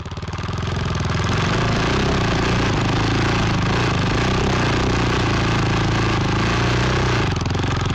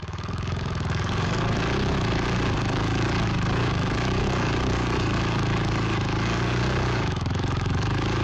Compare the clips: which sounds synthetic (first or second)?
second